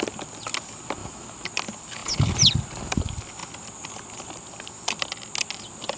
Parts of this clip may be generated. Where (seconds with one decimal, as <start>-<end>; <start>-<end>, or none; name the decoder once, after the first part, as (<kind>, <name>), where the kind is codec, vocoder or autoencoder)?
1.0-1.5 (autoencoder, DAC-VAE)